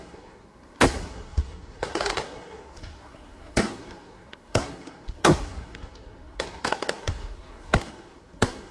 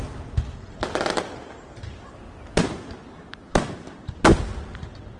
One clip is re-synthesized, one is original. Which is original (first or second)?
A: second